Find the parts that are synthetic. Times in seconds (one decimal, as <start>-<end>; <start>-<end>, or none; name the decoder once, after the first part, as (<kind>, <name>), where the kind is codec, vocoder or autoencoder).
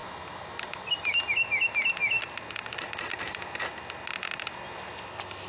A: none